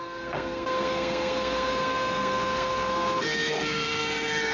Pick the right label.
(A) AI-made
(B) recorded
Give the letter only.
A